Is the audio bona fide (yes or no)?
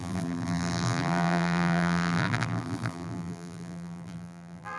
no